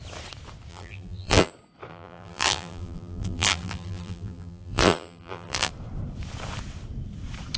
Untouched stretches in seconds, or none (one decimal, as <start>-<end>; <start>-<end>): 0.0-0.7; 1.5-1.9; 5.7-7.6